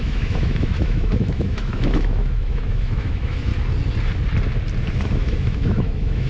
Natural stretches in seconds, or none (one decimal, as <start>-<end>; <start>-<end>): 3.5-5.0

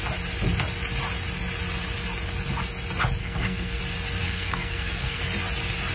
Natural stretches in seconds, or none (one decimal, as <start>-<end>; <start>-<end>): 0.0-3.2; 3.8-4.2; 5.2-5.9

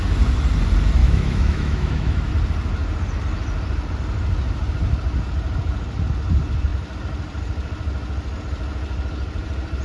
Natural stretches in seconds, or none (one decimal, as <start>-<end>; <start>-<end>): 0.0-1.0; 2.3-9.8

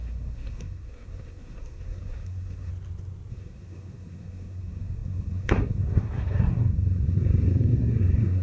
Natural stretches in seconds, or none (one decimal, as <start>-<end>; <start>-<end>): 2.7-3.3

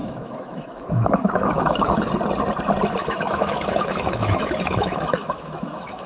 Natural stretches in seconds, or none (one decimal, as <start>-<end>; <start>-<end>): 2.1-3.0

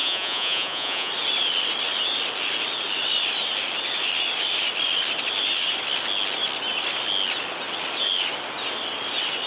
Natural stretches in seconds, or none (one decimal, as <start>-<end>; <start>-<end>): 1.1-9.5

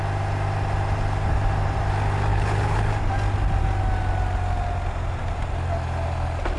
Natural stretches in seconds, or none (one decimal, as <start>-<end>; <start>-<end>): 0.0-2.3; 2.9-6.6